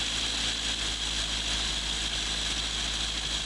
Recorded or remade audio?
recorded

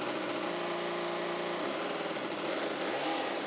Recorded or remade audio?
recorded